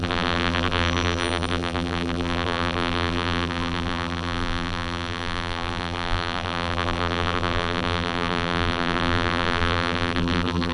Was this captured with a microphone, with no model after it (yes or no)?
no